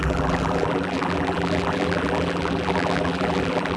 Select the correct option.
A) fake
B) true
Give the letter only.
A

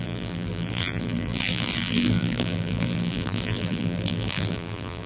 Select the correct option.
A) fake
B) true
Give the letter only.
A